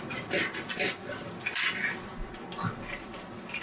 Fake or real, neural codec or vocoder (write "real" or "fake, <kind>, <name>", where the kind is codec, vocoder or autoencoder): real